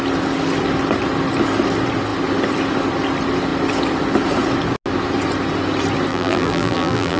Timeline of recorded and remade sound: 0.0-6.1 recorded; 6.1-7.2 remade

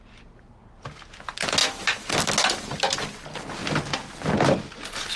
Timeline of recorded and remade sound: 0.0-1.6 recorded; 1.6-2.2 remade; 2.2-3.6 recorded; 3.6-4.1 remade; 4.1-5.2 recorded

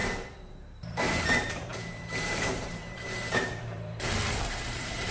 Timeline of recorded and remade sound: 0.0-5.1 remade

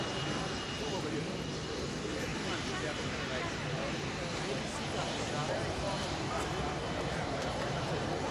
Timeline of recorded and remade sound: 0.0-5.4 recorded; 5.4-8.3 remade

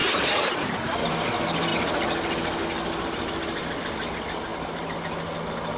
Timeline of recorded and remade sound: 0.0-1.1 remade; 1.1-5.8 recorded